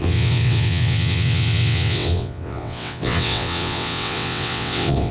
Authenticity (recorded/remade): remade